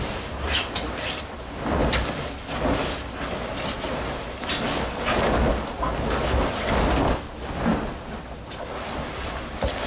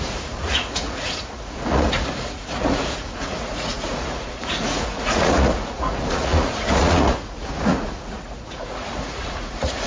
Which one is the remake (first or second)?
second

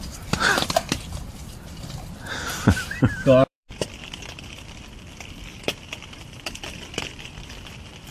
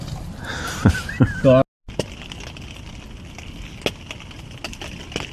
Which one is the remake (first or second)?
first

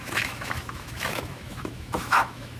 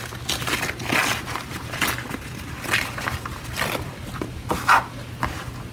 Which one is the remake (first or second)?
first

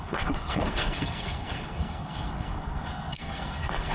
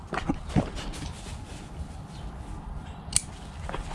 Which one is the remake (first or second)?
first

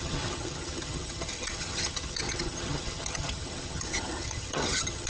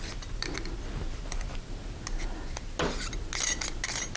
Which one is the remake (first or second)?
first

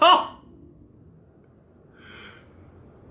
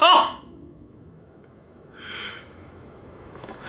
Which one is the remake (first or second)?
second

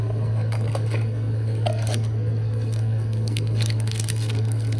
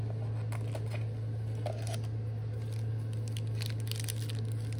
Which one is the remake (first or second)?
first